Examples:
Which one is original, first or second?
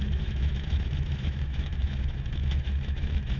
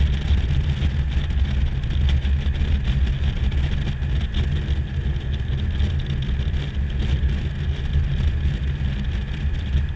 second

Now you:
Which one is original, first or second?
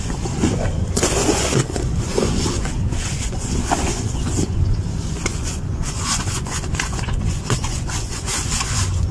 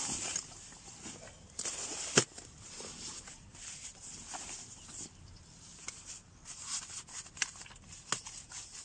second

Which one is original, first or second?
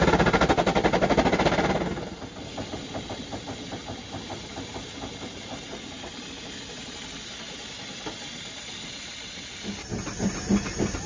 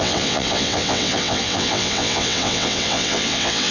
first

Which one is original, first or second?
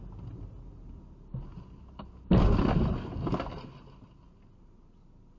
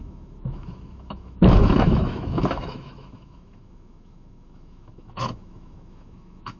first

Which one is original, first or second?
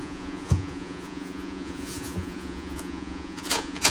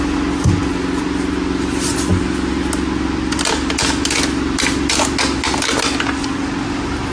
second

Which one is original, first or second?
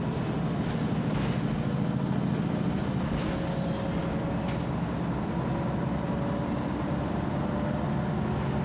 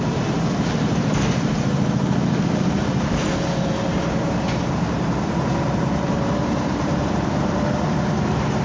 first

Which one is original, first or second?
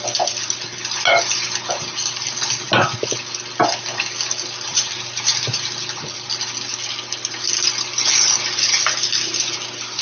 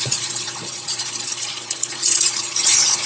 first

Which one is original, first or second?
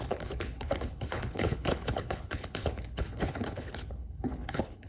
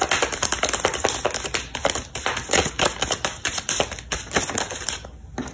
second